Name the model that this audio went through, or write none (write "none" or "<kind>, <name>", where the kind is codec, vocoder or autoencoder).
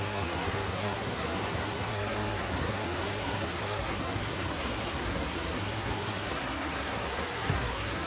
codec, SNAC